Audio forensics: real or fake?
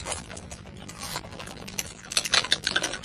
fake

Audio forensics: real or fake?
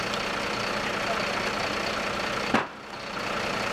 real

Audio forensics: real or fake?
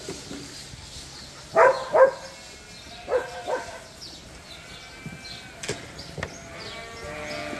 real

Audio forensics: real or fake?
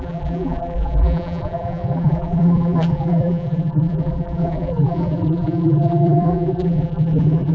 fake